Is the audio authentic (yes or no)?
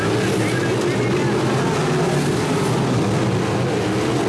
yes